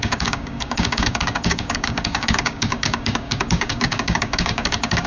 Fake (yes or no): yes